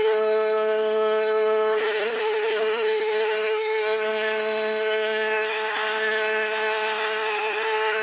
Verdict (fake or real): fake